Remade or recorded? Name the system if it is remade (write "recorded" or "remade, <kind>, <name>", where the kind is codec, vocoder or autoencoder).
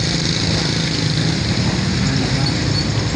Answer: recorded